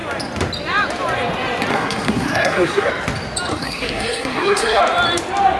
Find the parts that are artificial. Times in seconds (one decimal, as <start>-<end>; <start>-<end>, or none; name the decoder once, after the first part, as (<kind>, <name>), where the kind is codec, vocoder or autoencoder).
1.7-2.9 (codec, SNAC); 3.5-4.8